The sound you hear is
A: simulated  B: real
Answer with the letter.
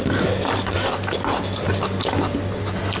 B